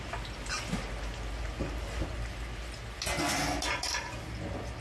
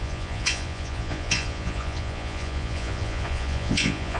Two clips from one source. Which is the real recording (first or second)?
first